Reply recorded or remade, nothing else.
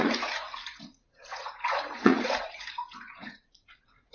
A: remade